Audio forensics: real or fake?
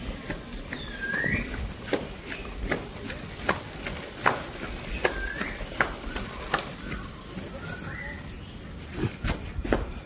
real